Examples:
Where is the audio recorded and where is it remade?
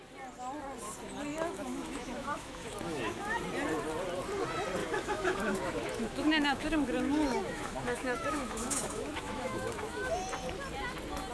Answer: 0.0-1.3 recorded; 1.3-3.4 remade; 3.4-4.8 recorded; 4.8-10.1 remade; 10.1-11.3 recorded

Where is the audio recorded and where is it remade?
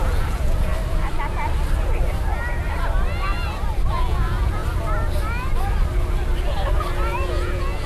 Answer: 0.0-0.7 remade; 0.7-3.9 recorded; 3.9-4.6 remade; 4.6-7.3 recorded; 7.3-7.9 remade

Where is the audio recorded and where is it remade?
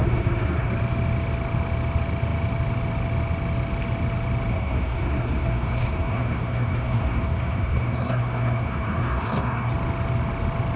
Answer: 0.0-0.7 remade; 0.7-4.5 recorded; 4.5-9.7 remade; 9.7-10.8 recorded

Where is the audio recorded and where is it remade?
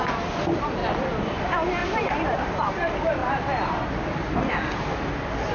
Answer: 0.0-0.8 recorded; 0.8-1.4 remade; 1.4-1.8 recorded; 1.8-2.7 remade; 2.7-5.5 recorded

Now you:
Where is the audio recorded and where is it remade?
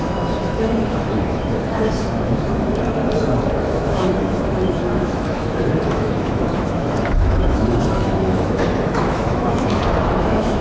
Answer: 0.0-3.0 remade; 3.0-3.5 recorded; 3.5-10.6 remade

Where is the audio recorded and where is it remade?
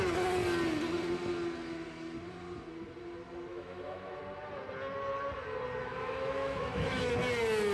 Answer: 0.0-3.5 recorded; 3.5-4.2 remade; 4.2-5.8 recorded; 5.8-7.1 remade; 7.1-7.7 recorded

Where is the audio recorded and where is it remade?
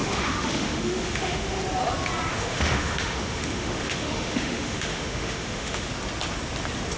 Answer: 0.0-1.6 remade; 1.6-2.3 recorded; 2.3-5.9 remade; 5.9-7.0 recorded